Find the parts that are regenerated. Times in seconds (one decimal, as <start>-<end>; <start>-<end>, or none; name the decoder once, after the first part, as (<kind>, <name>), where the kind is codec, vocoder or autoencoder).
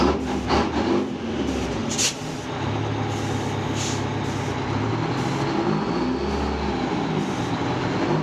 none